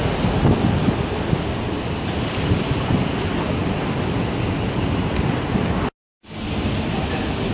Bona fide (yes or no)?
yes